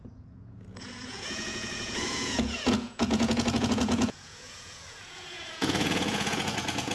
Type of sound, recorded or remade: remade